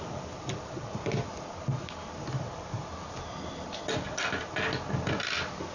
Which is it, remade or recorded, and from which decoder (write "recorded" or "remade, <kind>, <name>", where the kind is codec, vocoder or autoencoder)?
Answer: recorded